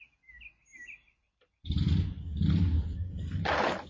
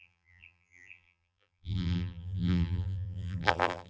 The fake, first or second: second